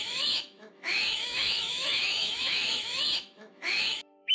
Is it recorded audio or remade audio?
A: remade